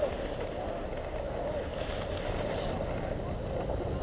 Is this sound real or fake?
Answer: real